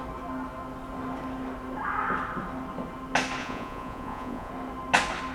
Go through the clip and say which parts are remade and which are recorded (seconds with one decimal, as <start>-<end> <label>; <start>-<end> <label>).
0.0-3.4 recorded; 3.4-4.5 remade; 4.5-5.3 recorded